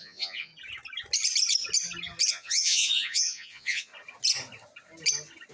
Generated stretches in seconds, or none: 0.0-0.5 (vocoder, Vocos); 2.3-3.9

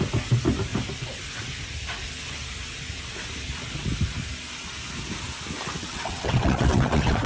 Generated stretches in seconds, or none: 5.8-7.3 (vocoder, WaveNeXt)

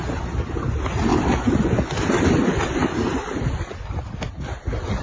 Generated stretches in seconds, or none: none

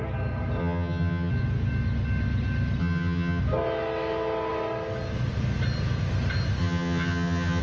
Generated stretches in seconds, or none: 0.6-1.3 (vocoder, HiFi-GAN); 2.8-3.4; 6.6-7.6